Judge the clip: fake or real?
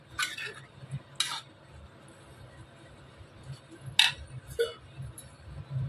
real